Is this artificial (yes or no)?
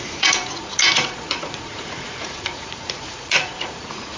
yes